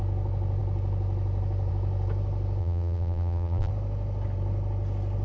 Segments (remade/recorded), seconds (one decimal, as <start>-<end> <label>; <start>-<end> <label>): 0.0-2.6 recorded; 2.6-3.7 remade; 3.7-5.2 recorded